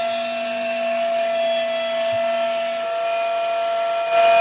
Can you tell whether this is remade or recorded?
recorded